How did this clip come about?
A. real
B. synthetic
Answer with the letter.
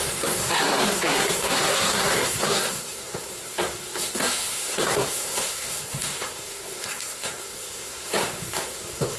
B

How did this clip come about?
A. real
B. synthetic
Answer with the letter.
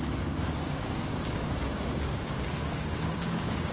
B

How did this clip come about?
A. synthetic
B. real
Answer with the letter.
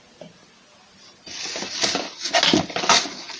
B